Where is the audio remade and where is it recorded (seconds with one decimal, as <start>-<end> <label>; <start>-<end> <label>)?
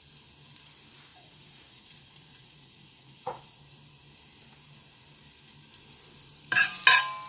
0.0-1.1 recorded; 1.1-3.6 remade; 3.6-7.3 recorded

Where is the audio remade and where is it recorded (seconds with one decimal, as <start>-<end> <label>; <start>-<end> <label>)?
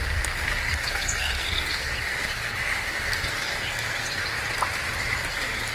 0.0-4.2 remade; 4.2-5.3 recorded; 5.3-5.7 remade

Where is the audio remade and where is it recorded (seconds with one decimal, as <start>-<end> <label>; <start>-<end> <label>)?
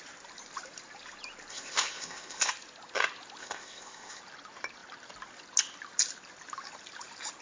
0.0-1.5 recorded; 1.5-2.5 remade; 2.5-3.4 recorded; 3.4-4.2 remade; 4.2-7.4 recorded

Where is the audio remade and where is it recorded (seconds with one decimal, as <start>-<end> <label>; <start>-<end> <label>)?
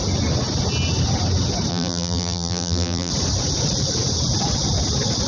0.0-1.7 recorded; 1.7-3.1 remade; 3.1-5.3 recorded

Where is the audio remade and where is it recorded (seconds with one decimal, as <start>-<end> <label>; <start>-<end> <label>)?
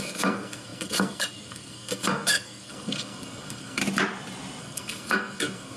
0.0-3.8 remade; 3.8-4.6 recorded; 4.6-5.8 remade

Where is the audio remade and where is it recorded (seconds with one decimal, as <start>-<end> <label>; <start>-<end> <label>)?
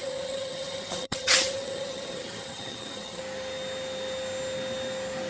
0.0-3.2 remade; 3.2-5.3 recorded